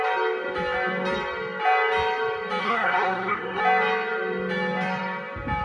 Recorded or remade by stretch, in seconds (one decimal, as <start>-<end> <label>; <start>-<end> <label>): 0.0-2.6 recorded; 2.6-3.6 remade; 3.6-5.6 recorded